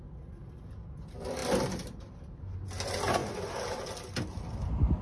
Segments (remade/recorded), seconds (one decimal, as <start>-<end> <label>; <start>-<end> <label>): 0.0-5.0 recorded